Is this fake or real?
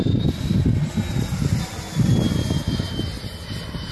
real